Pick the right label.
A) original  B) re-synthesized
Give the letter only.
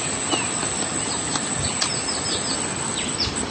A